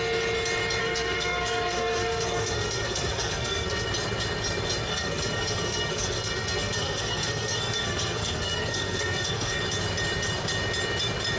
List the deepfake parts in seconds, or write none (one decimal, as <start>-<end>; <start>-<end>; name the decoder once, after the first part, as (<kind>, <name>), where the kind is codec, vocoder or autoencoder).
0.8-3.9 (codec, SNAC); 4.9-9.6